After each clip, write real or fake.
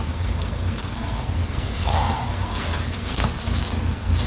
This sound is fake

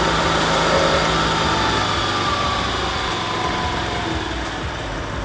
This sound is real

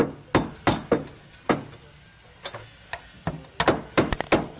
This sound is real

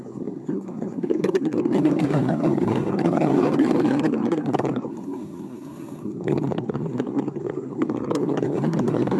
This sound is fake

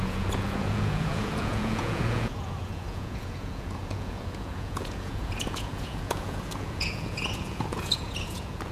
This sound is fake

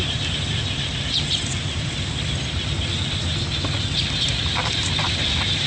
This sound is real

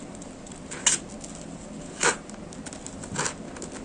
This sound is real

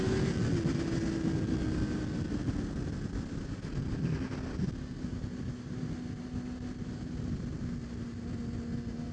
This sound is real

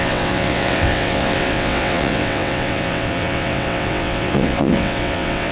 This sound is fake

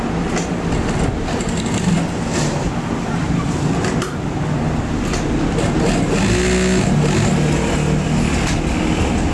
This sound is real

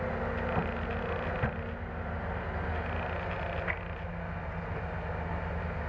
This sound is real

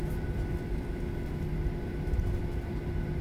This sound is real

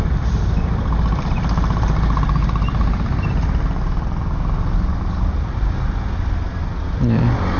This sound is real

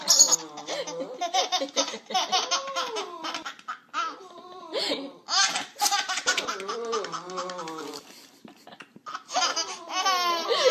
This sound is real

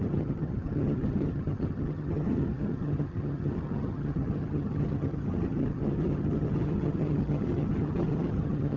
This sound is fake